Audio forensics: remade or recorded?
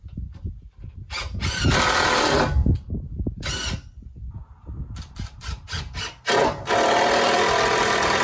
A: recorded